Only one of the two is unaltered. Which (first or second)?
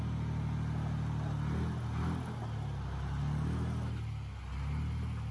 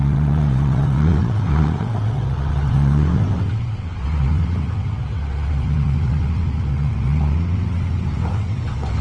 first